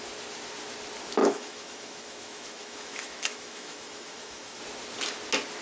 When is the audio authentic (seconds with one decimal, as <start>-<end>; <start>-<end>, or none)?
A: 0.0-1.2; 4.6-5.6